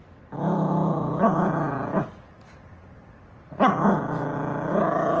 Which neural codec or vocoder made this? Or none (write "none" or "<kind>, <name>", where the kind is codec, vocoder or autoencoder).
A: none